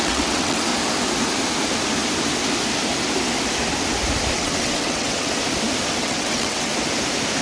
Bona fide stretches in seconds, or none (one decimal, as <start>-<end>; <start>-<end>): 0.7-4.3; 5.4-6.0; 6.7-7.4